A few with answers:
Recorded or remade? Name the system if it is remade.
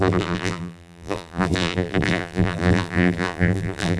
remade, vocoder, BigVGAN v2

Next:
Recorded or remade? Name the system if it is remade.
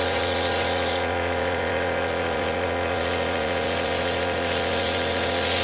remade, vocoder, Vocos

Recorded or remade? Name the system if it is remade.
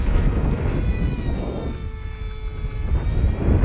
recorded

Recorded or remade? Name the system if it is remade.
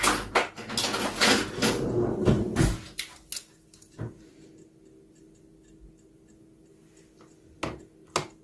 recorded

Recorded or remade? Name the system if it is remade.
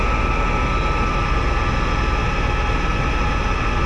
recorded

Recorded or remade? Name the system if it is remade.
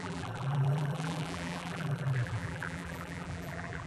remade, vocoder, BigVGAN v2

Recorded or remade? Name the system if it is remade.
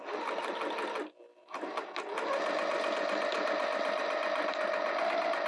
recorded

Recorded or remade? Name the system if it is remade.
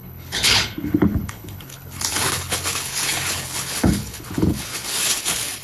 remade, codec, HILCodec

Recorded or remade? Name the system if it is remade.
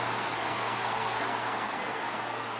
remade, codec, SNAC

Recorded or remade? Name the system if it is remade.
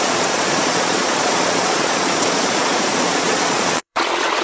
remade, vocoder, Vocos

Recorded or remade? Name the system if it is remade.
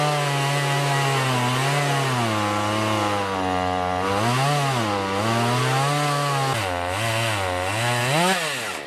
recorded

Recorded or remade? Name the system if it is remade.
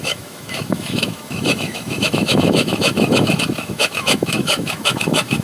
remade, autoencoder, DAC-VAE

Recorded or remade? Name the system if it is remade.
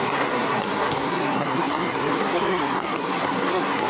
remade, codec, SNAC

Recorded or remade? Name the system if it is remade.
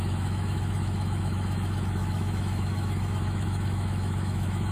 remade, autoencoder, DAC-VAE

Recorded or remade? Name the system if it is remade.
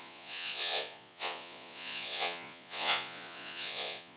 remade, vocoder, Vocos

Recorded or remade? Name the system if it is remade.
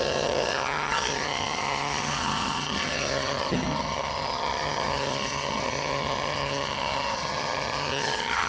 remade, vocoder, HiFi-GAN